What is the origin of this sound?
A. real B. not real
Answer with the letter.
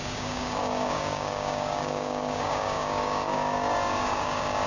B